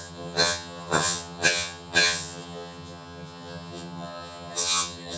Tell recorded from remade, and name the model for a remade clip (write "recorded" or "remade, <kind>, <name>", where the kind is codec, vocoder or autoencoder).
remade, vocoder, HiFi-GAN